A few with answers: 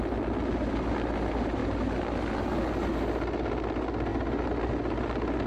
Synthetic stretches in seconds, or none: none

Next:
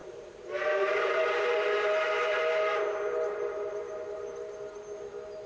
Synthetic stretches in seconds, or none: 0.0-2.8

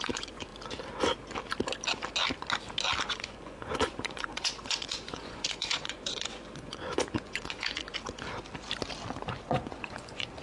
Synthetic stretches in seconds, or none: 0.0-0.5; 3.1-7.9; 9.3-10.4

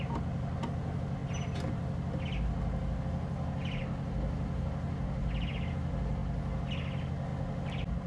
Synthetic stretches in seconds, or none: none

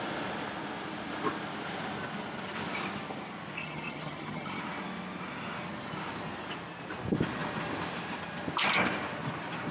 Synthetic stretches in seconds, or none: 3.6-4.6

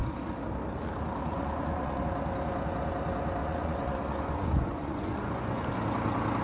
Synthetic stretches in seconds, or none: 1.3-2.0; 3.4-5.7

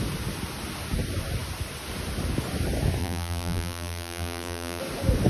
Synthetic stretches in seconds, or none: 3.0-4.8

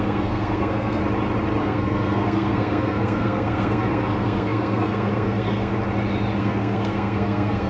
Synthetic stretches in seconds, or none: 0.0-1.0; 1.6-5.7; 6.4-7.7